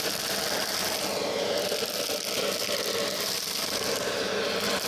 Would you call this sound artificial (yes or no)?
no